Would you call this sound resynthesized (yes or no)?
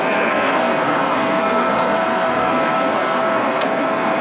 yes